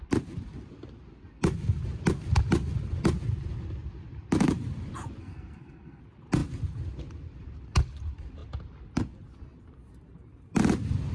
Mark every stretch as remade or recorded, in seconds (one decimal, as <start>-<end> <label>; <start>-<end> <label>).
0.0-5.2 recorded; 5.2-6.0 remade; 6.0-11.1 recorded